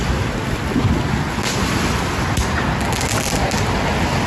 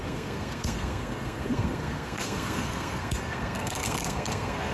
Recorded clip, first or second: first